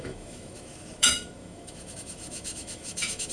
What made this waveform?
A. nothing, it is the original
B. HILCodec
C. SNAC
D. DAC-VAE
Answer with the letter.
D